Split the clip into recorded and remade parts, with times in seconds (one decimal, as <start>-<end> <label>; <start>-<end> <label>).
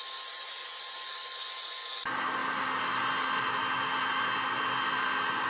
0.0-5.5 recorded